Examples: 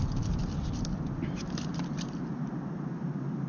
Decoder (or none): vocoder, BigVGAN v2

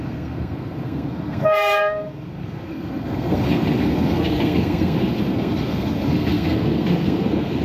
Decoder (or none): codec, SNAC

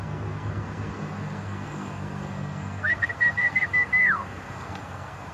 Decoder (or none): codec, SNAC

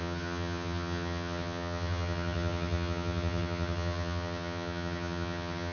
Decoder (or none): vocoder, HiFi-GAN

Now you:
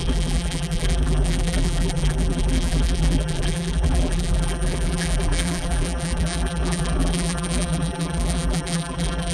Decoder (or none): vocoder, BigVGAN v2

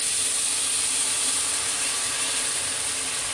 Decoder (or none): none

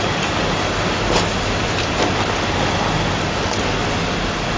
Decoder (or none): none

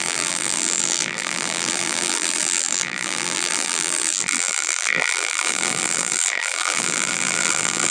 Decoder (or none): vocoder, BigVGAN v2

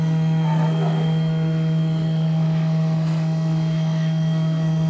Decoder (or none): codec, SNAC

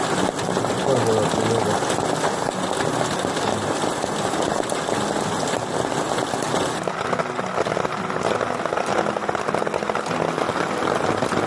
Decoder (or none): none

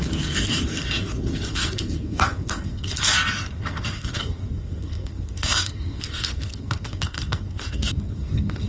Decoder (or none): codec, SNAC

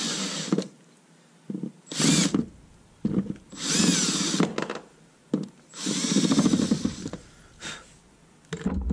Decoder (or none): none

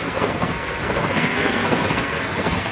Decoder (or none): codec, SNAC